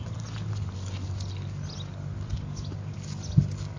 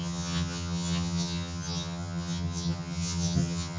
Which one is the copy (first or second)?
second